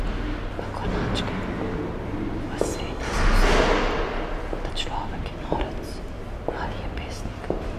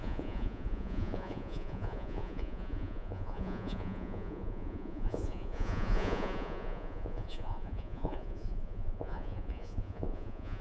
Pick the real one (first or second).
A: first